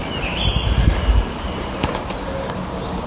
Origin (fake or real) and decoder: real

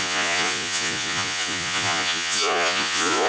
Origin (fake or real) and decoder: fake, vocoder, Vocos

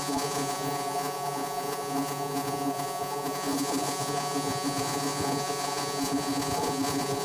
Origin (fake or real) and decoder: fake, vocoder, Vocos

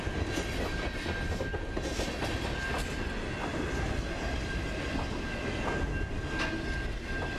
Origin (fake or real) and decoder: real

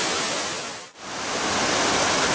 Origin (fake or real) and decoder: real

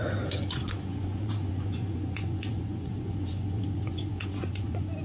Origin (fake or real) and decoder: fake, vocoder, Vocos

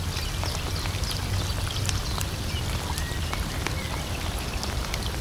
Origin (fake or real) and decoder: real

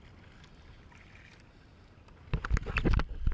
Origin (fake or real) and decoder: real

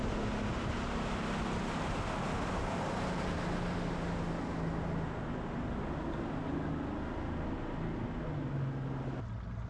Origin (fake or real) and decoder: real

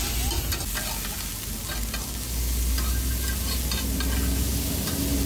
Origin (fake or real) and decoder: real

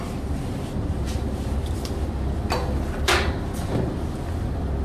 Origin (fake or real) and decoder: real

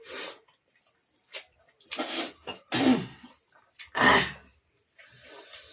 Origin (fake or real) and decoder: real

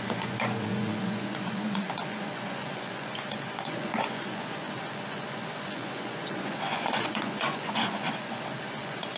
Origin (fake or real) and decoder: fake, vocoder, Vocos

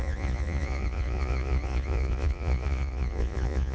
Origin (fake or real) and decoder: fake, vocoder, Vocos